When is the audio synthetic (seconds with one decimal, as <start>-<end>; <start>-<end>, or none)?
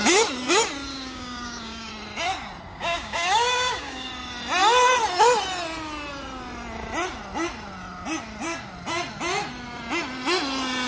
0.9-1.9; 2.7-4.1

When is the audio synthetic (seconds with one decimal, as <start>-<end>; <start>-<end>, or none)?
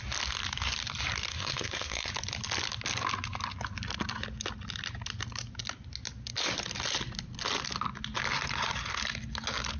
1.3-2.1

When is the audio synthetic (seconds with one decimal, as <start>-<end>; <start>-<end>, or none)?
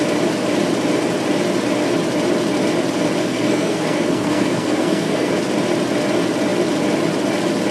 3.2-5.3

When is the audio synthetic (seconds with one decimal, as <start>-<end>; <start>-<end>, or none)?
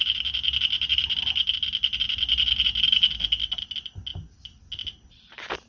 none